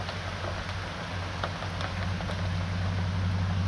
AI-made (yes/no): no